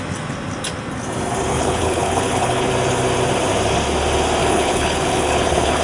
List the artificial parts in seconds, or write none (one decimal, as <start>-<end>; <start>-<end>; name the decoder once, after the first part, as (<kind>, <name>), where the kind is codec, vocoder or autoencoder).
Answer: 1.5-2.7 (codec, HILCodec); 4.4-5.8

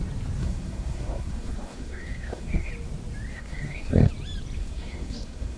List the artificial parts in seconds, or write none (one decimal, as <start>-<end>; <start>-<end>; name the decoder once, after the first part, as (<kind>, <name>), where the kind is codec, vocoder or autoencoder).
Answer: 0.4-2.7 (codec, SNAC); 3.3-4.1; 4.6-5.6

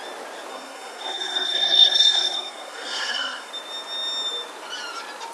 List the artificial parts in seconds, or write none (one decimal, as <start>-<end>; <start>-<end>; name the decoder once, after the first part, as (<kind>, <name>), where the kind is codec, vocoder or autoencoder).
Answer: 0.5-3.5 (codec, SNAC)

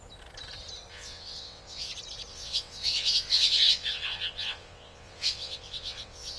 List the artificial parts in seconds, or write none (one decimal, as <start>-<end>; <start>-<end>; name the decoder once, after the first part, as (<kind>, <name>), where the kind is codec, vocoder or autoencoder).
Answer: 0.9-1.9 (vocoder, WaveNeXt); 2.3-6.4

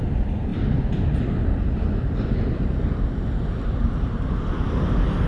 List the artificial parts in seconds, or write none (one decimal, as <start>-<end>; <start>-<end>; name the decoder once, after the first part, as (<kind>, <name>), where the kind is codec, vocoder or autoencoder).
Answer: none